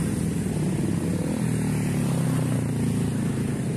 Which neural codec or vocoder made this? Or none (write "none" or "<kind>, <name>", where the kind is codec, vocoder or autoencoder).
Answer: none